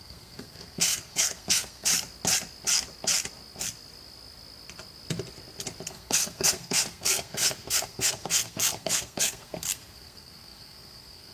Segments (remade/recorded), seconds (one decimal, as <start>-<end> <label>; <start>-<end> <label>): 0.0-1.9 remade; 1.9-5.9 recorded; 5.9-11.3 remade